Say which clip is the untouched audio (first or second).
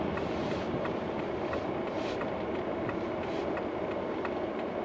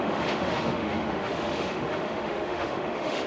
first